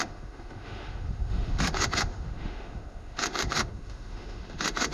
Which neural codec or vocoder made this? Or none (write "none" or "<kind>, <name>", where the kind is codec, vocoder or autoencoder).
autoencoder, DAC-VAE